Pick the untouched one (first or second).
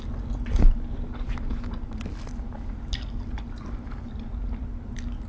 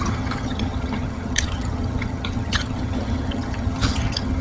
first